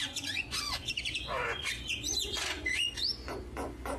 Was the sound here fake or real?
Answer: fake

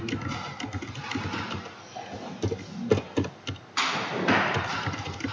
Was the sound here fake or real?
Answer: real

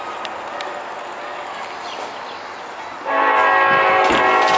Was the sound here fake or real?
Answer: real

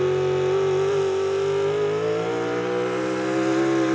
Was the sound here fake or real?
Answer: real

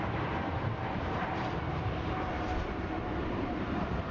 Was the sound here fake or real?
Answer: fake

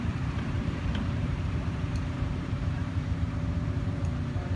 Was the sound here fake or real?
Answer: fake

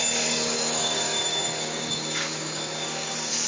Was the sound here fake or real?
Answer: fake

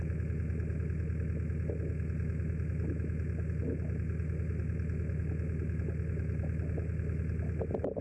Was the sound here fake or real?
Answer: real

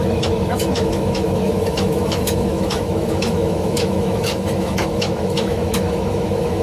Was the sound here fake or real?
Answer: fake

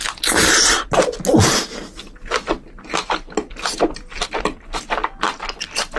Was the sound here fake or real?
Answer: real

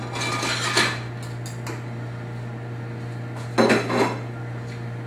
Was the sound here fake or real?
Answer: real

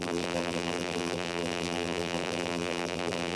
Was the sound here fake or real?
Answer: fake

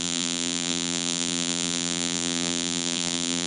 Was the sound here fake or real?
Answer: fake